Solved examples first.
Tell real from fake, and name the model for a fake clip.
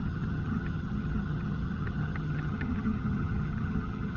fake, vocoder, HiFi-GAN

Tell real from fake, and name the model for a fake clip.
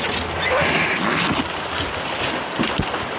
real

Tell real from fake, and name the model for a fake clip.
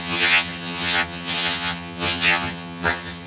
fake, vocoder, HiFi-GAN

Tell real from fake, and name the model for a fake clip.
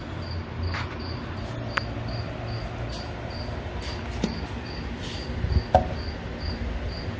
real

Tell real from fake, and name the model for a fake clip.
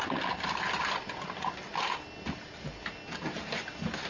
real